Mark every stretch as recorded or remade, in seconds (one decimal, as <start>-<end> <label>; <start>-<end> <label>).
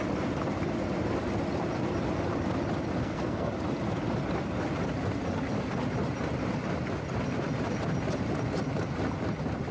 0.0-3.0 recorded; 3.0-3.5 remade; 3.5-9.7 recorded